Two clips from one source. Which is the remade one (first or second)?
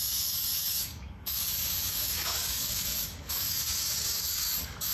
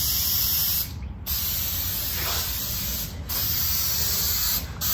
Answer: first